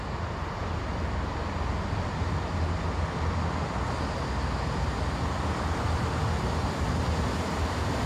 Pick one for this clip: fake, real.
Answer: real